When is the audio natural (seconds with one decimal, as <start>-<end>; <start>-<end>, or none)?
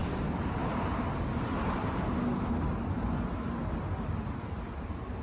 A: 0.0-5.2